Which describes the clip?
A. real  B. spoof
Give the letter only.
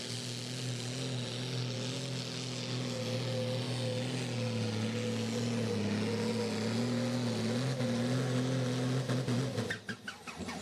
A